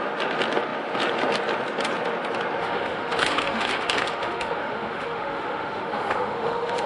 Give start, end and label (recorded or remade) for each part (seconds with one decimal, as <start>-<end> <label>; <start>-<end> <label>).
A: 0.0-2.6 recorded; 2.6-6.9 remade